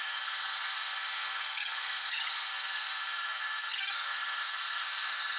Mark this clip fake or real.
fake